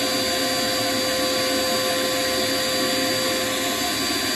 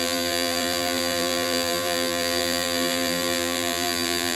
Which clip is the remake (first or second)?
second